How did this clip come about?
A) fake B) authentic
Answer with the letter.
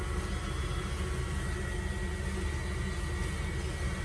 B